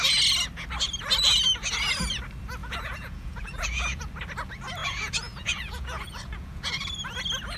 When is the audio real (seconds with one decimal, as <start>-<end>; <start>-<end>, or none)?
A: 0.0-2.6; 4.0-4.8; 6.7-7.6